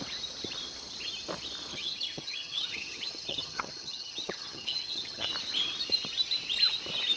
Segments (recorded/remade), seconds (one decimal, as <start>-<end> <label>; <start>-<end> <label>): 0.0-1.7 recorded; 1.7-5.3 remade; 5.3-7.2 recorded